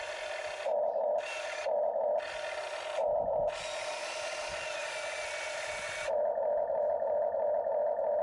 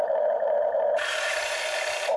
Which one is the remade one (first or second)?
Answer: second